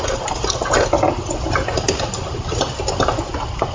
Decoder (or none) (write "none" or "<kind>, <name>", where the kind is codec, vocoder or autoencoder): none